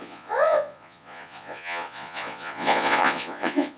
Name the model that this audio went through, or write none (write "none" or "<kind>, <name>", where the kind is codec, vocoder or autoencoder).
vocoder, Vocos